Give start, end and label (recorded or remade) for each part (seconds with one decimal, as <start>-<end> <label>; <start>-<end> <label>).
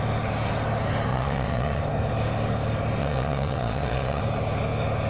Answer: 0.0-1.1 recorded; 1.1-1.8 remade; 1.8-3.0 recorded; 3.0-4.2 remade; 4.2-5.1 recorded